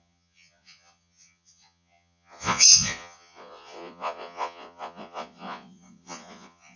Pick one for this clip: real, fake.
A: fake